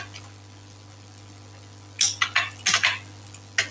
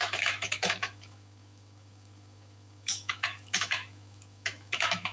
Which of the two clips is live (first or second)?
first